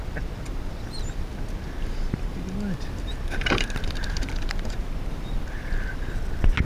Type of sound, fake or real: real